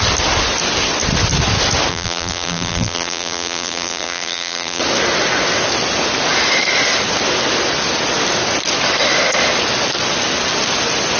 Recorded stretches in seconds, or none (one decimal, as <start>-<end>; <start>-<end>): 0.0-1.9; 4.8-11.2